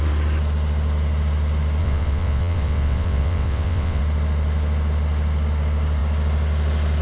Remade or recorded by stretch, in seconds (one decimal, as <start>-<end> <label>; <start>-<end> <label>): 0.0-1.8 recorded; 1.8-4.0 remade; 4.0-7.0 recorded